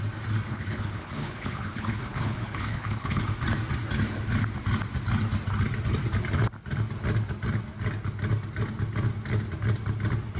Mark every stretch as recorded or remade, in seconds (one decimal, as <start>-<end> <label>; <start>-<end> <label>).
0.0-0.5 recorded; 0.5-3.2 remade; 3.2-10.4 recorded